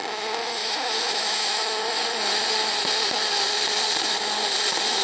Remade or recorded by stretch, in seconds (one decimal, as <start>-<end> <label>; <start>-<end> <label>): 0.0-0.6 recorded; 0.6-1.8 remade; 1.8-5.0 recorded